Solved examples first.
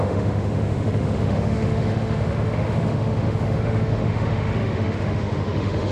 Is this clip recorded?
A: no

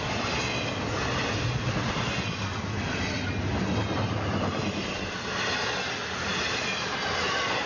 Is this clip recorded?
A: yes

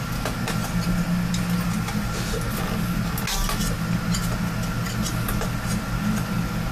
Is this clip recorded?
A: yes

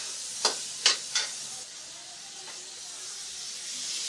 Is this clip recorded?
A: yes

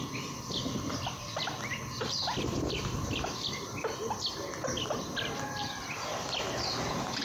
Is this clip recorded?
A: no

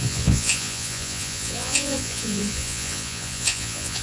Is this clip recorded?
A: no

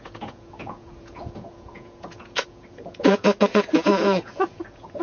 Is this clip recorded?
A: no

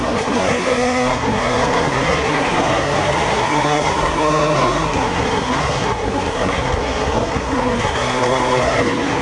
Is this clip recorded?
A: no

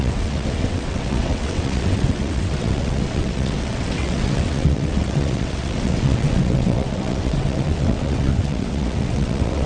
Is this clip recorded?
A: no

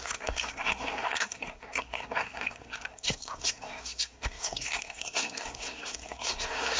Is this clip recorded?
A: no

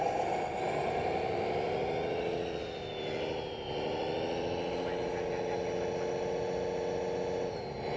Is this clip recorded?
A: yes